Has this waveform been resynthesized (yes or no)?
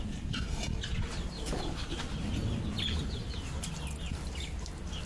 no